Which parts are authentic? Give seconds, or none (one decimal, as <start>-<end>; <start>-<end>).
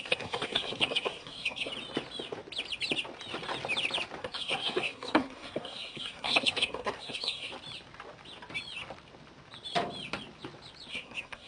1.7-4.2; 7.5-10.9